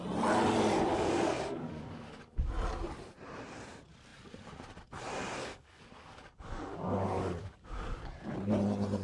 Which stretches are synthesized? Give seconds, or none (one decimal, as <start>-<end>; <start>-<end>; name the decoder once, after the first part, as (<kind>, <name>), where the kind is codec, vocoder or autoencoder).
0.9-2.5 (codec, DAC); 5.4-8.3